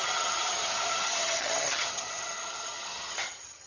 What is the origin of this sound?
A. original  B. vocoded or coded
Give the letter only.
B